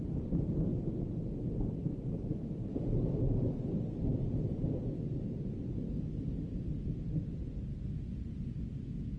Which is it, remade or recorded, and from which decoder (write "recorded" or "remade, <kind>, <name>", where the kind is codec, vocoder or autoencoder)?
recorded